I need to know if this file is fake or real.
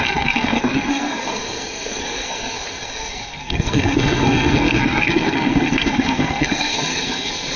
fake